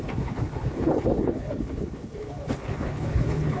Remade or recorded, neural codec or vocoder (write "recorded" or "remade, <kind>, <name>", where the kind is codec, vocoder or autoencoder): remade, codec, HILCodec